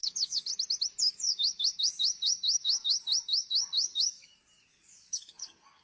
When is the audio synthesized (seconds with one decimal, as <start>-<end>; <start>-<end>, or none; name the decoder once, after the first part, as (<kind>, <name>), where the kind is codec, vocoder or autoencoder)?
0.0-0.5 (codec, DAC); 1.0-5.8